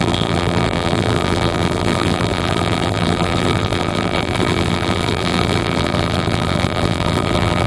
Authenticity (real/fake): fake